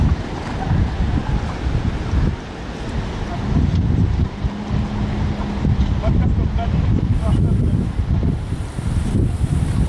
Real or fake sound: real